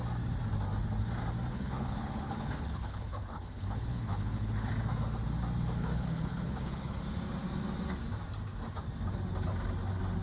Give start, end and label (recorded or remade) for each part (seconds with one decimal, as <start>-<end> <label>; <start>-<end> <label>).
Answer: 0.0-1.5 recorded; 1.5-4.7 remade; 4.7-5.8 recorded; 5.8-7.0 remade; 7.0-10.2 recorded